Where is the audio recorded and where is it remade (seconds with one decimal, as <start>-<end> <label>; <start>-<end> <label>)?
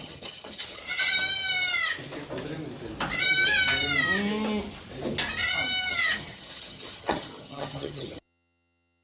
0.0-0.8 remade; 0.8-5.9 recorded; 5.9-9.0 remade